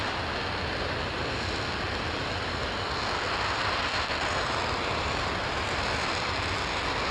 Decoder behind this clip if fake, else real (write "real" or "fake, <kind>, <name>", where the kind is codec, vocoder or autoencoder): real